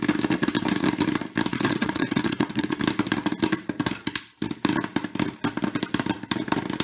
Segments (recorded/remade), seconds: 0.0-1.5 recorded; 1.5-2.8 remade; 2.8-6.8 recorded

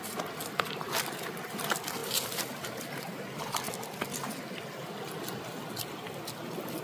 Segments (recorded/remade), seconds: 0.0-6.8 recorded